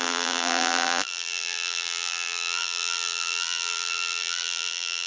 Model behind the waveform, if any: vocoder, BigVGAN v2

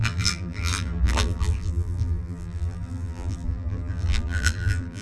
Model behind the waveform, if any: vocoder, BigVGAN v2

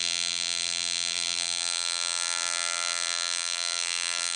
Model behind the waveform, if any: vocoder, BigVGAN v2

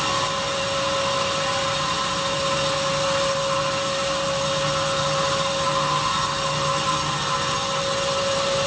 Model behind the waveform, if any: none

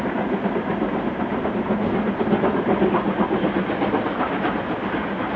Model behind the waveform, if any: none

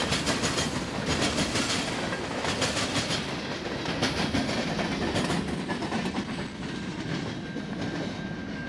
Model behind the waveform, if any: none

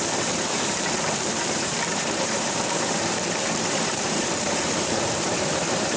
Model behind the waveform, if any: vocoder, BigVGAN v2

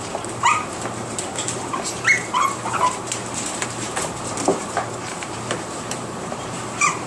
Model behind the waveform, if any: vocoder, BigVGAN v2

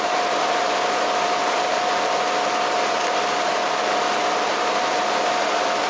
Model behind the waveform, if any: vocoder, BigVGAN v2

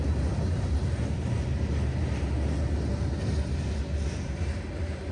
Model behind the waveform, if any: none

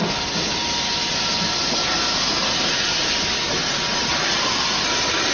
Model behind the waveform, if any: none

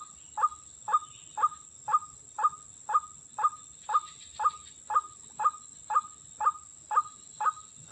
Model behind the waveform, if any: none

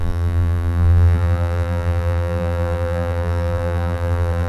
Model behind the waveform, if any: vocoder, BigVGAN v2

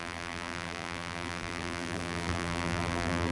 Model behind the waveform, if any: vocoder, BigVGAN v2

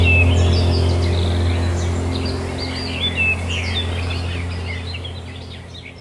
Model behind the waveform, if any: none